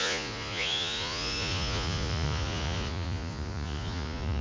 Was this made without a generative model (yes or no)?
no